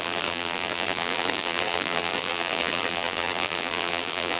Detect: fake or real fake